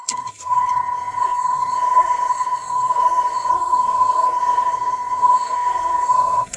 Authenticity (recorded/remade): remade